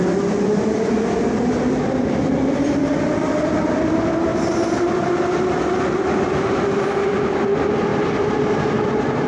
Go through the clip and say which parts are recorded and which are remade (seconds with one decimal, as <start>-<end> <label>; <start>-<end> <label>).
0.0-9.3 recorded